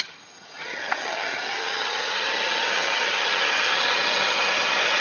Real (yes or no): no